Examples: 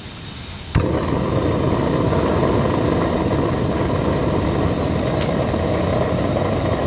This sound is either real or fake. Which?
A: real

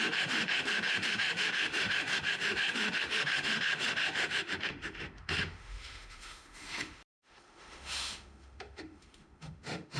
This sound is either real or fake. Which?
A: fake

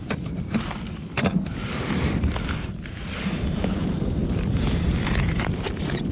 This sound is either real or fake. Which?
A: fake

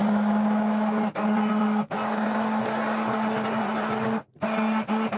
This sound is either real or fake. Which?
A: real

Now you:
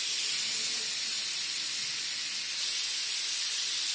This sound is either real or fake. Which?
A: real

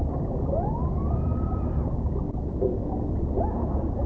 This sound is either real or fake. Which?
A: fake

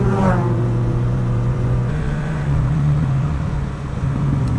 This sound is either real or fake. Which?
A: fake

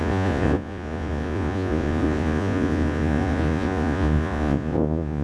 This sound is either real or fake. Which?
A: fake